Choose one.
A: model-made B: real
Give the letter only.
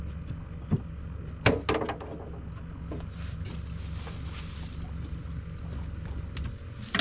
B